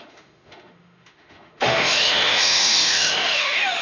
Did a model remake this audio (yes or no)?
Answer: yes